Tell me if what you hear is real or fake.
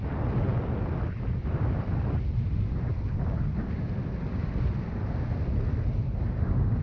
real